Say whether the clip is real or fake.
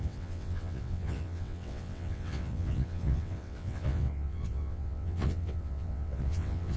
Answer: fake